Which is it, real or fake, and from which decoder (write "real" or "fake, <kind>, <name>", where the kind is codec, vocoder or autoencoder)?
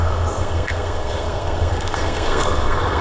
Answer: fake, codec, SNAC